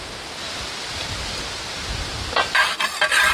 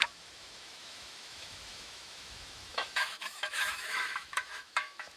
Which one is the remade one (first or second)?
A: second